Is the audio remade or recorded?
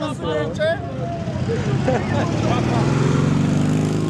recorded